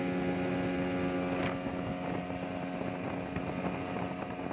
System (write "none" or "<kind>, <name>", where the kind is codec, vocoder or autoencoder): none